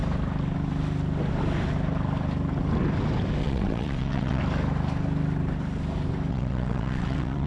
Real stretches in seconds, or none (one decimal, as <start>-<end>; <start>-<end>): 0.0-3.4; 4.4-6.3